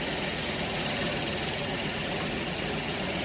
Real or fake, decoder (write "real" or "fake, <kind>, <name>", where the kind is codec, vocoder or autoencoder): fake, vocoder, Vocos